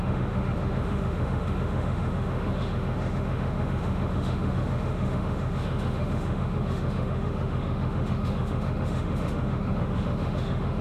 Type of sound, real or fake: fake